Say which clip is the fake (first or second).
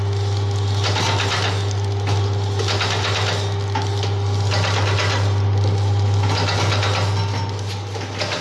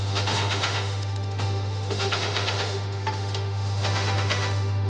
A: second